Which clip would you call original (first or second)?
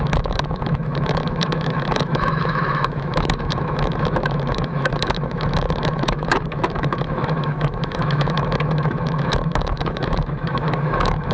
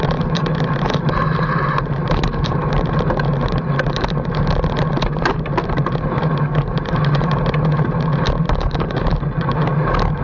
second